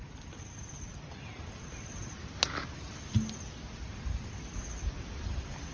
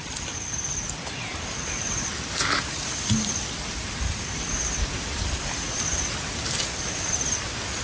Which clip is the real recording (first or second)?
first